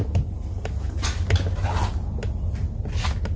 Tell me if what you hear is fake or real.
real